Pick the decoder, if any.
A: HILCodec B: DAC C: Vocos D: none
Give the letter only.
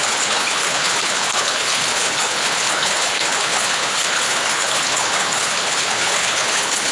A